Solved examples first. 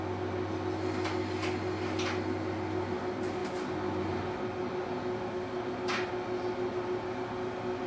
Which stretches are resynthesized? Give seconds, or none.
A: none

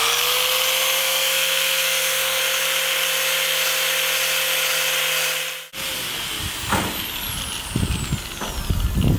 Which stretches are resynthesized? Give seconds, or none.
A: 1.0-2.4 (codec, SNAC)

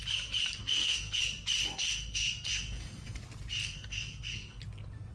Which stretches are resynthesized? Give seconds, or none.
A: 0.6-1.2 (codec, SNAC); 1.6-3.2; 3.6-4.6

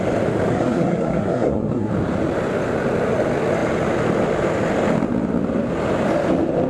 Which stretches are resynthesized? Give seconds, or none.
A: 0.5-1.9 (codec, SNAC)

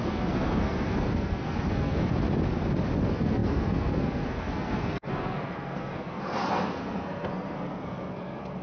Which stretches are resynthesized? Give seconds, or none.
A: 0.0-2.1 (codec, SNAC); 3.0-8.6

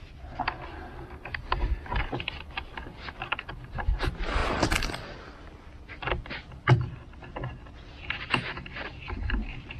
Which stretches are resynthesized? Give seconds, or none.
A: none

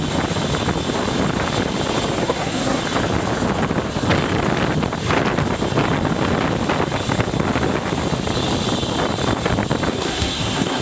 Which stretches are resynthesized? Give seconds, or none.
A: 2.2-2.8 (codec, SNAC); 9.9-10.8

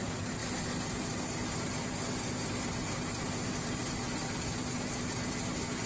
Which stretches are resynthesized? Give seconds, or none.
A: none